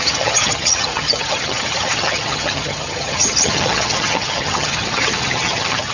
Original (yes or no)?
no